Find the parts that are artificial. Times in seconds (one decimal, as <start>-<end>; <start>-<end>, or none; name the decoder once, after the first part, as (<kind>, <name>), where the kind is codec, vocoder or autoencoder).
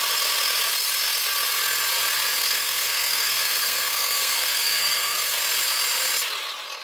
2.4-5.4 (codec, SNAC)